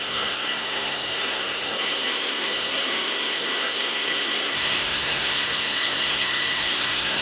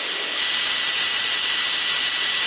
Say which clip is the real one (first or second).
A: second